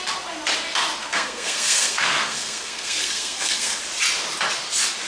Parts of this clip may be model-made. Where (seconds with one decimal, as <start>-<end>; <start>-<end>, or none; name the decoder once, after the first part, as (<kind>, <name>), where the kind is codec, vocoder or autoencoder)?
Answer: 1.0-3.8 (codec, SNAC)